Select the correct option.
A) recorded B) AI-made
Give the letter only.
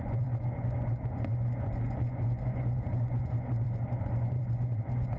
B